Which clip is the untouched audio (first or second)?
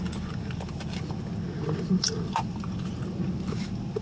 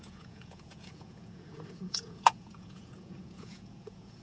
first